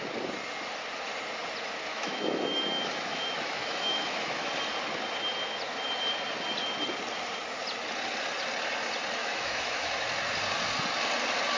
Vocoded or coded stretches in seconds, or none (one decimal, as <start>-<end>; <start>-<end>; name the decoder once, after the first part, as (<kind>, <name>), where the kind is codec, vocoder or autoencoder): 1.9-4.5 (autoencoder, DAC-VAE); 9.2-9.9